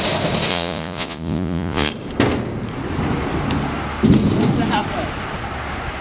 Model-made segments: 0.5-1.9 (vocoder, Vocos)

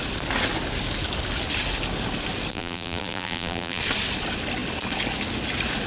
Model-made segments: 2.5-3.8 (vocoder, BigVGAN v2)

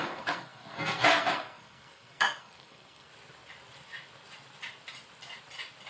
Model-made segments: 0.0-3.1 (codec, SNAC)

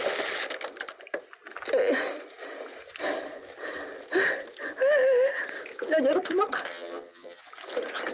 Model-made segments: 6.7-7.4 (vocoder, HiFi-GAN)

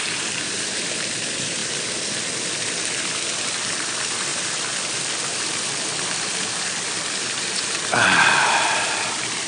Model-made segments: 0.0-9.5 (vocoder, BigVGAN v2)